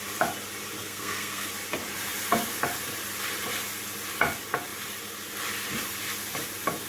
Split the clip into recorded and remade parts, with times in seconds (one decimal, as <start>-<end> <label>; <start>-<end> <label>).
0.0-0.8 recorded; 0.8-1.5 remade; 1.5-6.9 recorded